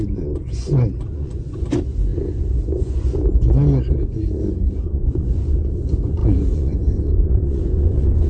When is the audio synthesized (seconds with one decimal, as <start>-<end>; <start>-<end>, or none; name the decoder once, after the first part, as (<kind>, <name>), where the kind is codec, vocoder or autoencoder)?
0.0-8.3 (vocoder, Vocos)